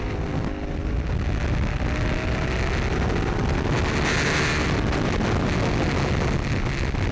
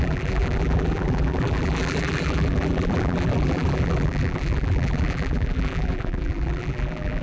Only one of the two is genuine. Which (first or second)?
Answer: first